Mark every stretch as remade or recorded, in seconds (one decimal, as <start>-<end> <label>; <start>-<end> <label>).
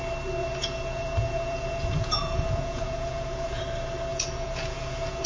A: 0.0-0.4 recorded; 0.4-3.6 remade; 3.6-4.1 recorded; 4.1-5.3 remade